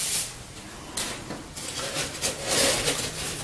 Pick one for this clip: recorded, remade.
recorded